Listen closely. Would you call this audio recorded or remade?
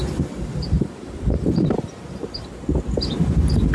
remade